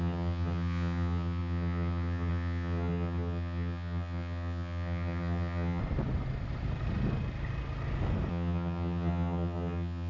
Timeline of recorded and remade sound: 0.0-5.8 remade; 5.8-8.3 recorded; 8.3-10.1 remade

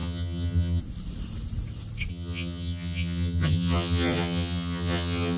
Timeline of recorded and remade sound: 0.0-0.8 remade; 0.8-2.1 recorded; 2.1-5.4 remade

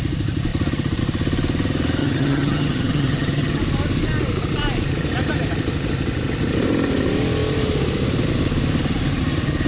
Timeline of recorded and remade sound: 0.0-2.0 recorded; 2.0-3.6 remade; 3.6-9.7 recorded

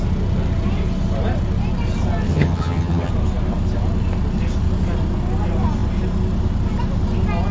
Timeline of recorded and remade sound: 0.0-2.3 recorded; 2.3-3.1 remade; 3.1-7.5 recorded

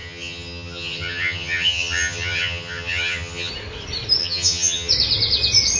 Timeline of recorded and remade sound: 0.0-3.5 remade; 3.5-4.2 recorded; 4.2-4.9 remade; 4.9-5.8 recorded

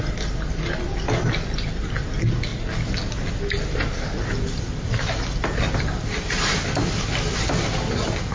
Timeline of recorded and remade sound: 0.0-8.3 recorded

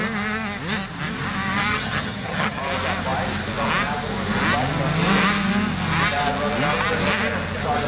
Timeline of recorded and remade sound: 0.0-1.7 recorded; 1.7-2.6 remade; 2.6-7.9 recorded

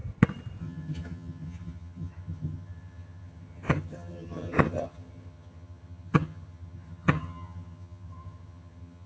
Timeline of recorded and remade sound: 0.0-0.6 recorded; 0.6-9.1 remade